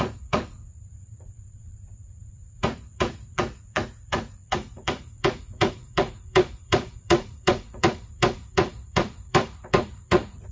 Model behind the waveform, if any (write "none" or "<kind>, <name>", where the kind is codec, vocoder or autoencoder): vocoder, Vocos